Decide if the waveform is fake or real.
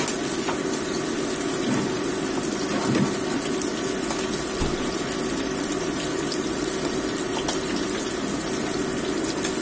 real